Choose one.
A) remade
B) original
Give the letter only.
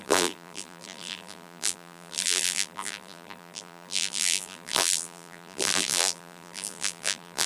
A